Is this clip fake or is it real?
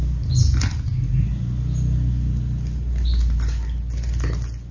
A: real